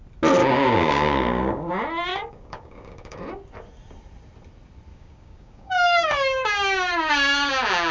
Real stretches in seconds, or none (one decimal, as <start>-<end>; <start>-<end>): 0.0-0.4; 1.7-2.1; 3.2-4.9; 7.5-7.9